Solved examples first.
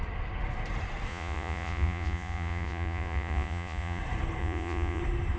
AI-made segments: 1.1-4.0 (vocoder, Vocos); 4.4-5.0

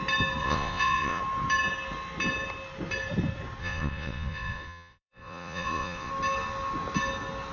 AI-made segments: 0.4-1.2 (vocoder, Vocos); 3.6-6.1

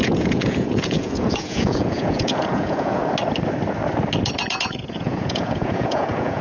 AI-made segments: 0.0-3.0 (vocoder, Vocos); 4.7-6.4

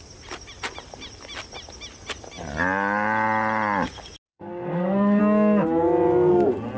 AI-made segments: 4.3-5.2 (codec, SNAC)